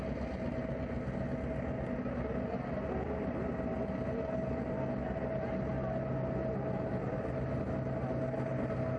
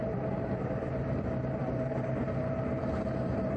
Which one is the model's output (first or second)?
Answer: second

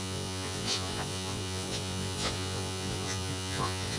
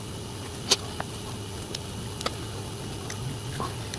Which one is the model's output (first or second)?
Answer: first